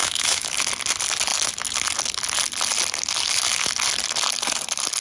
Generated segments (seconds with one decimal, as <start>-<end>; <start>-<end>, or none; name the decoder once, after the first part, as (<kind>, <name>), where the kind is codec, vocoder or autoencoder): 0.0-0.5 (autoencoder, DAC-VAE)